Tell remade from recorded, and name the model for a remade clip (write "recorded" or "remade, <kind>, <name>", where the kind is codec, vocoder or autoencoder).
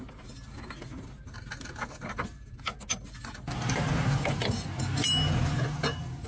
recorded